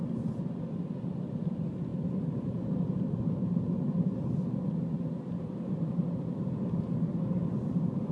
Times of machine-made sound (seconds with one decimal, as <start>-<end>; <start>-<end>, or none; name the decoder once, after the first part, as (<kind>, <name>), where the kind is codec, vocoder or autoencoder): none